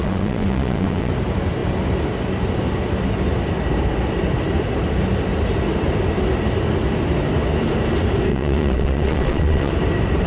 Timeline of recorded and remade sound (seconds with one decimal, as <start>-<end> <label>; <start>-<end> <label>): 0.0-1.1 remade; 1.1-8.3 recorded; 8.3-9.7 remade; 9.7-10.3 recorded